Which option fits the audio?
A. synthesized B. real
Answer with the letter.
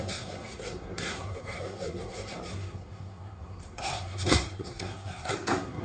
A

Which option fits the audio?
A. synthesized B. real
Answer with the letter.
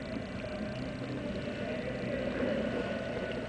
B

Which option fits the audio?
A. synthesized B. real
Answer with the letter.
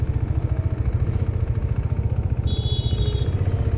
B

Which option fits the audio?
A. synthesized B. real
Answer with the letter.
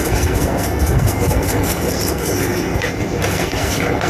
A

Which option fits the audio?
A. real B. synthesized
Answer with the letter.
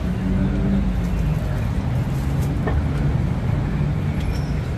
A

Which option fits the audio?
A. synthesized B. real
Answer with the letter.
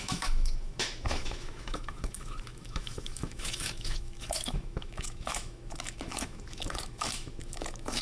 A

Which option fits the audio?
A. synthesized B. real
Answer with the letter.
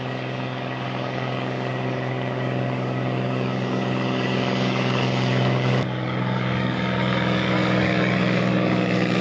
A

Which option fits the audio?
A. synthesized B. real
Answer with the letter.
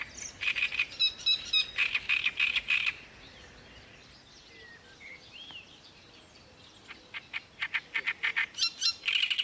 B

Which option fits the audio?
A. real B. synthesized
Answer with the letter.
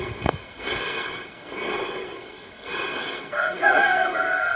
B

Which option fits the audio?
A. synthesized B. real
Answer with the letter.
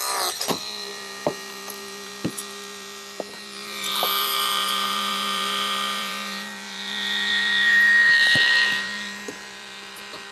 A